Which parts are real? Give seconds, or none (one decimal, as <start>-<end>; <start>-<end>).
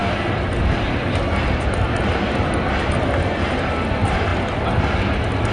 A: 0.0-5.5